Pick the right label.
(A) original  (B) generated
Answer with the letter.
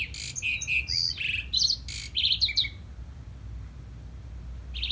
A